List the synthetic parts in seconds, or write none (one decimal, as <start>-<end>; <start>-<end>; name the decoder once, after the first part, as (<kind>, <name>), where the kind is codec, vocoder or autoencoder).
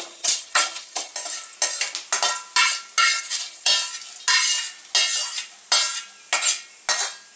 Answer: 0.0-1.1 (vocoder, HiFi-GAN); 3.2-3.7